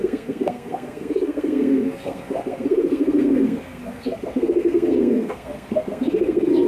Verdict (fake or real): fake